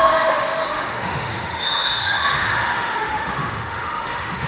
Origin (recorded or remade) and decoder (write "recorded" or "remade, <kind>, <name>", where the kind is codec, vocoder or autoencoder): remade, autoencoder, DAC-VAE